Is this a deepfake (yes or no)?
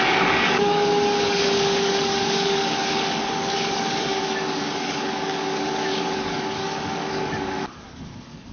yes